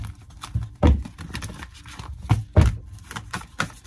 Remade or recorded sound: recorded